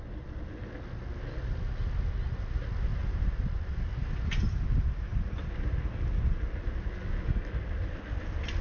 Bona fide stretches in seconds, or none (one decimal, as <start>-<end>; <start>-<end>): 0.0-8.6